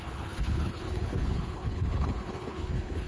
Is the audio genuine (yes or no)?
no